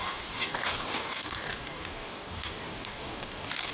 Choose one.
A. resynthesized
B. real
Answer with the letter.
A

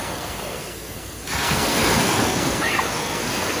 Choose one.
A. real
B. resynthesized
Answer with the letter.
B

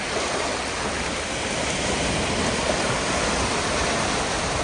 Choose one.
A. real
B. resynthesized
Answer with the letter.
A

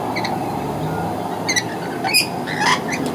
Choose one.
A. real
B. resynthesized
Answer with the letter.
A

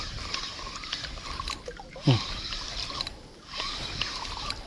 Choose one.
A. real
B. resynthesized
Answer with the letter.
A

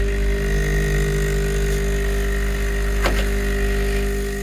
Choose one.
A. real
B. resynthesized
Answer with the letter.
A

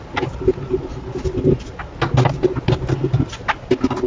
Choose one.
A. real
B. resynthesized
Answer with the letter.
A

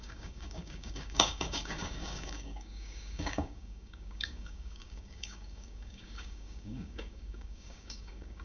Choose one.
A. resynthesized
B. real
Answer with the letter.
A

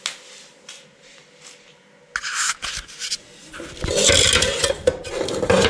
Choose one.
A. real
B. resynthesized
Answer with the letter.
A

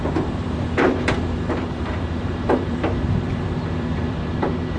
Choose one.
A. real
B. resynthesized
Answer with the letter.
B